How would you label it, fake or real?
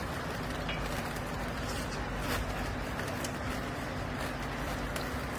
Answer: real